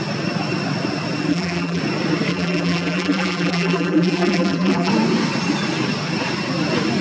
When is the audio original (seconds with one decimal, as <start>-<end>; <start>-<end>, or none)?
0.0-1.3; 1.8-2.3; 4.9-7.0